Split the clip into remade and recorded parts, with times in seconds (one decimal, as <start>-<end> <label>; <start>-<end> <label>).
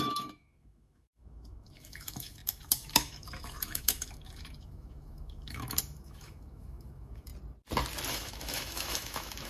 0.0-7.3 remade; 7.3-8.1 recorded; 8.1-9.5 remade